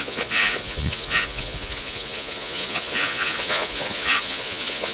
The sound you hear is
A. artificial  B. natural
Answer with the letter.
A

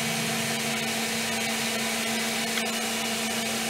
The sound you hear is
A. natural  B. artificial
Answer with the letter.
A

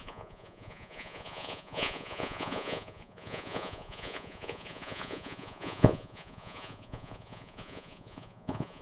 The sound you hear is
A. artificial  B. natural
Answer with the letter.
A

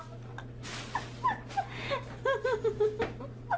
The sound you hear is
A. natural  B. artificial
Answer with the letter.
A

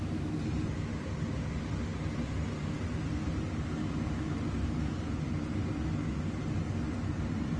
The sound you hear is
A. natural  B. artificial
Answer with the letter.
A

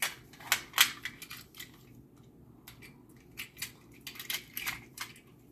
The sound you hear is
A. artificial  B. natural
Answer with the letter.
B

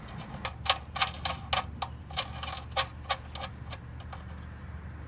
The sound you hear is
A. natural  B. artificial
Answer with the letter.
A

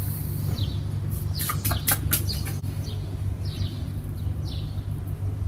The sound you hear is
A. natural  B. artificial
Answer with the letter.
A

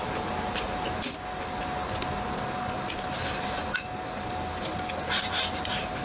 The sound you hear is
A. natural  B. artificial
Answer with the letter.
A